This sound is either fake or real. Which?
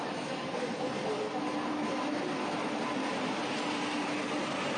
real